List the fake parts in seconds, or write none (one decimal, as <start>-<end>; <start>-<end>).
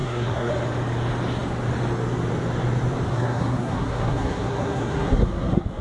0.0-0.5; 3.1-5.8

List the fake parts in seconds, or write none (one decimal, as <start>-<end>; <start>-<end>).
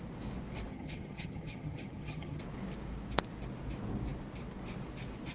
0.7-2.4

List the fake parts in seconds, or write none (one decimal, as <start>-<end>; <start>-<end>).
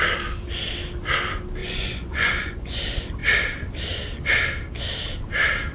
1.6-2.8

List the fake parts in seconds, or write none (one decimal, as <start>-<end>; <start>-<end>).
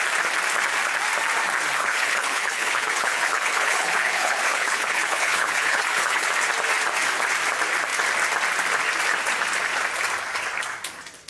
1.8-6.3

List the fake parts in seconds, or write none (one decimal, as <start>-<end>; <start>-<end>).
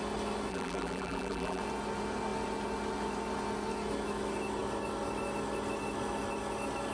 0.5-1.6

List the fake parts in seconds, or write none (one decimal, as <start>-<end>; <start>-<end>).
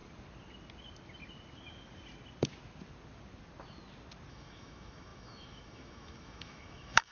4.3-7.1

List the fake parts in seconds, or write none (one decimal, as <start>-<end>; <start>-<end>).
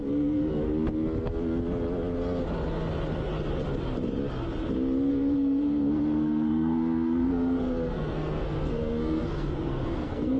0.0-0.7; 5.1-10.4